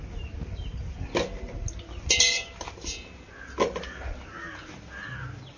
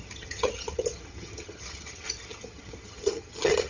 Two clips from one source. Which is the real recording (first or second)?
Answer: first